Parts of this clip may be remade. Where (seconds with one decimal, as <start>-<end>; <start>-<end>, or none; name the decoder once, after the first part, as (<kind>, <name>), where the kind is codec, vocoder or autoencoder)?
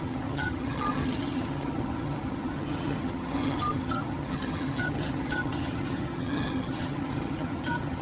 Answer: 0.0-8.0 (vocoder, HiFi-GAN)